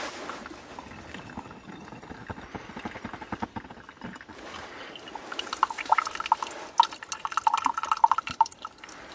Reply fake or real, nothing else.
real